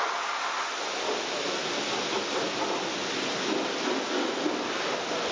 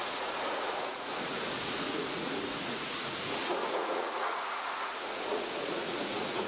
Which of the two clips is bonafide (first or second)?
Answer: first